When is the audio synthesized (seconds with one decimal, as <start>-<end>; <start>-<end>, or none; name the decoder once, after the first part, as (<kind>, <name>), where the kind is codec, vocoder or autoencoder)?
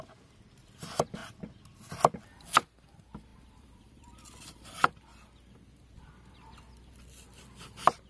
3.3-4.9 (vocoder, BigVGAN v2)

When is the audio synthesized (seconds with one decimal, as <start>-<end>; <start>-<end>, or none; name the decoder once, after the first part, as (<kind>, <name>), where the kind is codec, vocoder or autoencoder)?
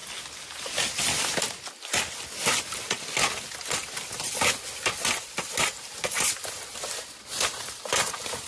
none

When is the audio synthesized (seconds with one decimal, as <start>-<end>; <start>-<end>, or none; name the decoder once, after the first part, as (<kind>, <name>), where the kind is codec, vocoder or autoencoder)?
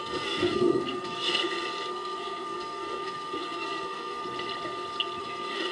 0.0-1.3 (codec, SNAC); 1.9-4.2; 5.2-5.7